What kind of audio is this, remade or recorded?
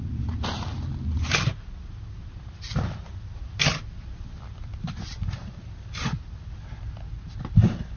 recorded